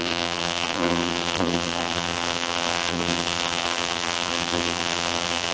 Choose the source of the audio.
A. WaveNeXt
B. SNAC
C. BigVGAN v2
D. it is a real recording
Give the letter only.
C